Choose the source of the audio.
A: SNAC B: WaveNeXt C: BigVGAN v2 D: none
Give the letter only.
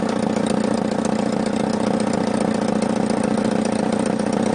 D